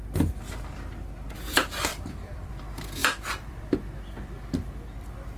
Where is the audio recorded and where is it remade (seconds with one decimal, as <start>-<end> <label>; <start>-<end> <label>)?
0.0-1.9 recorded; 1.9-2.5 remade; 2.5-3.0 recorded; 3.0-3.9 remade; 3.9-5.4 recorded